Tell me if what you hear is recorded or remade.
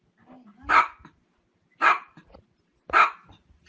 recorded